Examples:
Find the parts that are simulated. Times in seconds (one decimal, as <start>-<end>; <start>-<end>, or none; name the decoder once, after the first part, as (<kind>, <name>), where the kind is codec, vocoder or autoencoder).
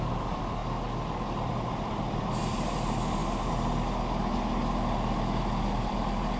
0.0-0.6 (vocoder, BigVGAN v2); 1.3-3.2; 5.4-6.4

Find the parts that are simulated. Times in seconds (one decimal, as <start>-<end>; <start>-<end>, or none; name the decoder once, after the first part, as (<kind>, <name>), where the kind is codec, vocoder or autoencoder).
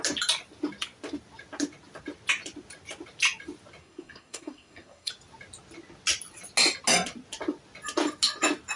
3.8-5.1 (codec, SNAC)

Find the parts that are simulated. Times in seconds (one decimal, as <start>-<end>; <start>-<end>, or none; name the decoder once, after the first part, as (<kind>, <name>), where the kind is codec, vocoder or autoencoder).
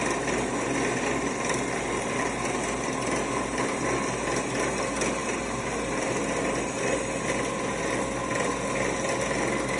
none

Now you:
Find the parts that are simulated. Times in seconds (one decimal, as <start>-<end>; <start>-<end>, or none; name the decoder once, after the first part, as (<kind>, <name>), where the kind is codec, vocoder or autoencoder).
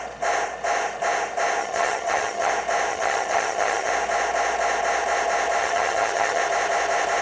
1.6-2.5 (vocoder, HiFi-GAN); 2.9-3.9; 5.6-6.4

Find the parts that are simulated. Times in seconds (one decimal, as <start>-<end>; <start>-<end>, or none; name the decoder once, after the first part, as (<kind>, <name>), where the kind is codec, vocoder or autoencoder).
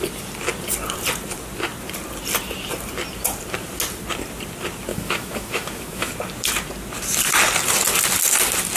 4.9-6.1 (autoencoder, DAC-VAE)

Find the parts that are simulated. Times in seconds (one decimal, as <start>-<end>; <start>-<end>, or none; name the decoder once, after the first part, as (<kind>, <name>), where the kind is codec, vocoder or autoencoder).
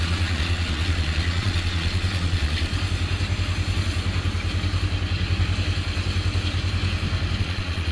0.0-2.7 (vocoder, Vocos); 7.4-7.9